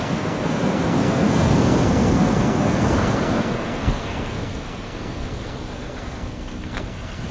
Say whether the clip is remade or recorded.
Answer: remade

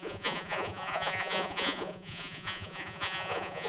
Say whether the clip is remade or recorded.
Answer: remade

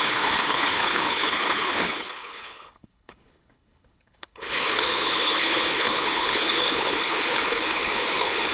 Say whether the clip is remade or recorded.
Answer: remade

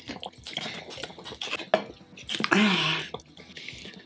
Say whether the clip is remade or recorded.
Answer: recorded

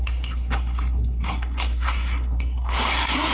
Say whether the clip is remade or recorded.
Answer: remade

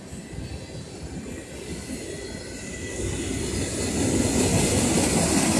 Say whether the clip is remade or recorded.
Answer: recorded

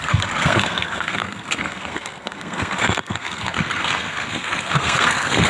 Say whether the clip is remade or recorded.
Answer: remade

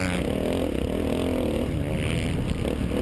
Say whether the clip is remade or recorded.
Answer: recorded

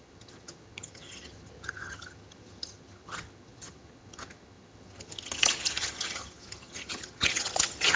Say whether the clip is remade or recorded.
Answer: remade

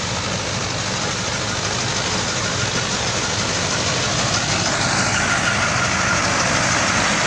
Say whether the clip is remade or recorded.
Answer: recorded